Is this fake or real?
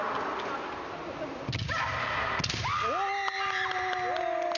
real